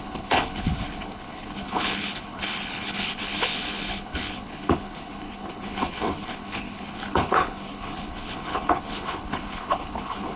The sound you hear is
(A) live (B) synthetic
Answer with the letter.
B